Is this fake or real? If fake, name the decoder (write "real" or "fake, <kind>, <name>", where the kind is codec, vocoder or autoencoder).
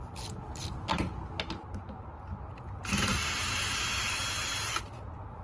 real